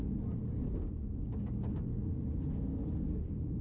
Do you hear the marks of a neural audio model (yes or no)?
no